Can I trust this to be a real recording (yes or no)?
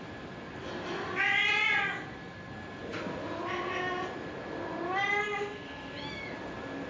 yes